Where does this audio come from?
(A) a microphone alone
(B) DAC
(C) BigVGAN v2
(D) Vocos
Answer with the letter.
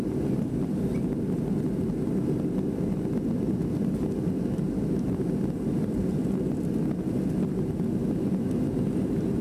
A